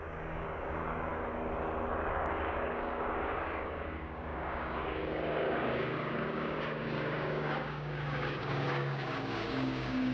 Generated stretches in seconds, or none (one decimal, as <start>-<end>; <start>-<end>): 0.0-1.1; 2.1-10.1